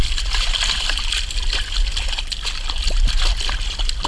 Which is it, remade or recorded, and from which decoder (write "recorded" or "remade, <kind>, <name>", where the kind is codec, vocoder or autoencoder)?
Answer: recorded